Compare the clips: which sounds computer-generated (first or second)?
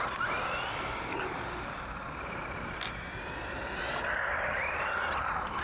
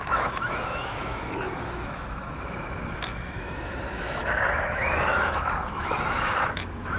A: second